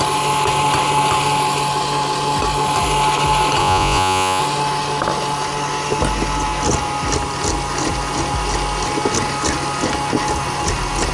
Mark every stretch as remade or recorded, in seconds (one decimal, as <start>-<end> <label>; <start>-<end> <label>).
0.0-3.6 recorded; 3.6-4.4 remade; 4.4-11.1 recorded